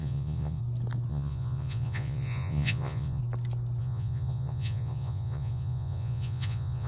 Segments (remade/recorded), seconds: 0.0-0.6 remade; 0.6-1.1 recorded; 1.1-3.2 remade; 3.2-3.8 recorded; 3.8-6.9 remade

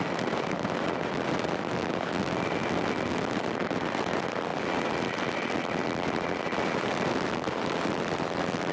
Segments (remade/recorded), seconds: 0.0-8.7 recorded

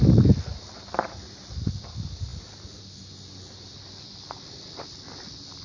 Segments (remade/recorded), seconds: 0.0-5.6 recorded

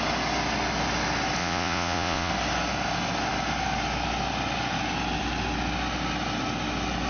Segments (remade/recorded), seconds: 0.0-1.4 recorded; 1.4-2.3 remade; 2.3-7.1 recorded

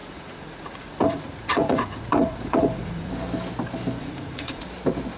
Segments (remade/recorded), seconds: 0.0-3.1 remade; 3.1-4.0 recorded; 4.0-4.6 remade; 4.6-5.2 recorded

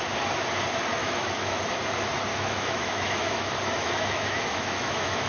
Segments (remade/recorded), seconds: 0.0-1.0 recorded; 1.0-1.6 remade; 1.6-2.3 recorded; 2.3-5.3 remade

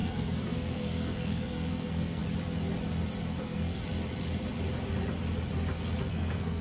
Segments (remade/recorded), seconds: 0.0-2.2 remade; 2.2-3.2 recorded; 3.2-3.8 remade; 3.8-6.1 recorded; 6.1-6.6 remade